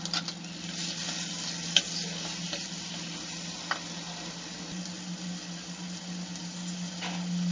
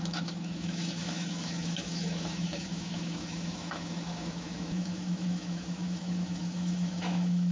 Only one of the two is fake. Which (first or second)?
second